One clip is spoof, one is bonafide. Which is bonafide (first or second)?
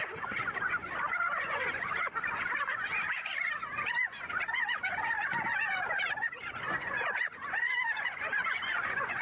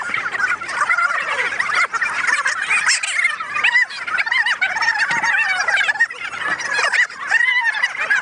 second